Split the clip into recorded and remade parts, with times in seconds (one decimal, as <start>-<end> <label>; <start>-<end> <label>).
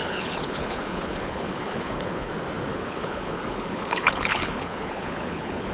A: 0.0-2.3 remade; 2.3-2.7 recorded; 2.7-5.7 remade